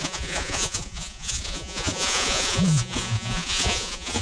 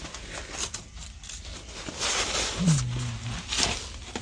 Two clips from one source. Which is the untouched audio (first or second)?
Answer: second